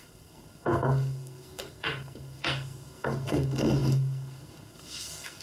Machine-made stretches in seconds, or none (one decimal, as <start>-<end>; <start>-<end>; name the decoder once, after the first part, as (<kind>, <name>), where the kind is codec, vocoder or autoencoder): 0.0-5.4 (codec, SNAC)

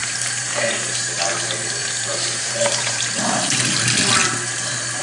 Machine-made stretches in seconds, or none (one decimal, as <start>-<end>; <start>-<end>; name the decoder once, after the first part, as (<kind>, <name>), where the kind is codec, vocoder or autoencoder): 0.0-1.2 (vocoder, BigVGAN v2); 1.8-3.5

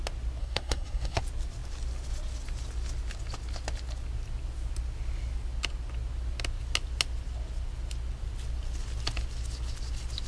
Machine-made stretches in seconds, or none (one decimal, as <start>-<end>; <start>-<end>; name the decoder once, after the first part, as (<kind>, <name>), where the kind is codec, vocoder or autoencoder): 0.4-1.2 (codec, SNAC)

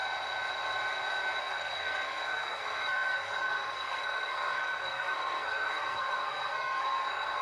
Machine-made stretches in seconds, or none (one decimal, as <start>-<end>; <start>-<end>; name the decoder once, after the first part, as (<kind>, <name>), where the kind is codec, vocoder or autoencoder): 1.4-7.4 (codec, SNAC)

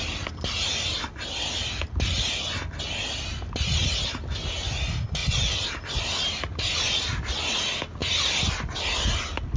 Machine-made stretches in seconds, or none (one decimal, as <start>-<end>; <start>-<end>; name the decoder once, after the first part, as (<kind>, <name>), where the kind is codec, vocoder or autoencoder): none

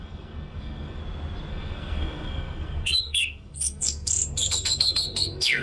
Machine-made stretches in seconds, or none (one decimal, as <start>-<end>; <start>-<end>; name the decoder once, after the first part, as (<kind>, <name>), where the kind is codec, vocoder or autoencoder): 0.0-1.0 (codec, SNAC); 1.5-5.6